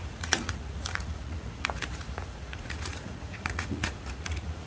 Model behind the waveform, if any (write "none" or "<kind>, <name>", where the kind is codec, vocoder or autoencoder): vocoder, Vocos